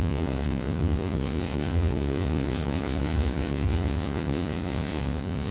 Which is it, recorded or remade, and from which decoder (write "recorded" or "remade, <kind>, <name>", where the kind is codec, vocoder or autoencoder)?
remade, vocoder, Vocos